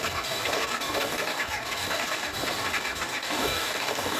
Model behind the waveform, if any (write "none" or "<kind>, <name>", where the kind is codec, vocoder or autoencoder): codec, DAC